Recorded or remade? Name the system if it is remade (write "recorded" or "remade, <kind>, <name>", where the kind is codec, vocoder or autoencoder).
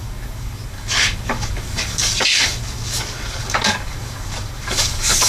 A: remade, codec, DAC